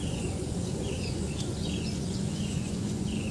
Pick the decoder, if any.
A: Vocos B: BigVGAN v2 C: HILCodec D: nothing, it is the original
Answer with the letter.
A